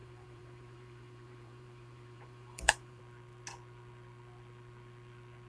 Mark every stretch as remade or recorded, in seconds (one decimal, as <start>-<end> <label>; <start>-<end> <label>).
0.0-3.0 remade; 3.0-5.5 recorded